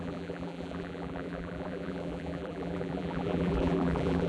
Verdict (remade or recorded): remade